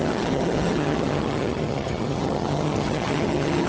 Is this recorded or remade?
remade